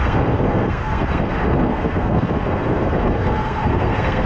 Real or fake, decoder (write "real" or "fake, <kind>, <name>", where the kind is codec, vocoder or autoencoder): fake, codec, SNAC